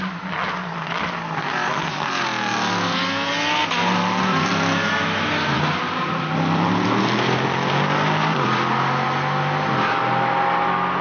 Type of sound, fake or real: real